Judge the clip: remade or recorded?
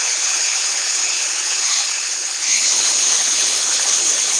remade